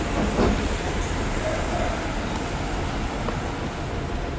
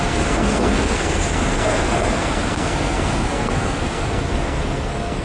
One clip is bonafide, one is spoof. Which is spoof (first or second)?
second